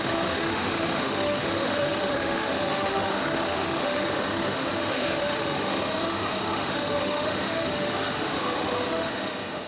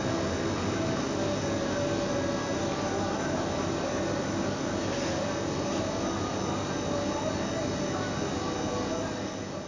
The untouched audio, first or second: second